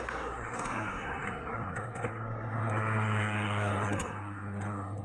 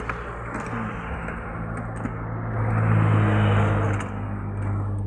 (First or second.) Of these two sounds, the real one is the second